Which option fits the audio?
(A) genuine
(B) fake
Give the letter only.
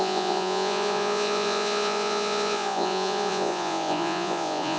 B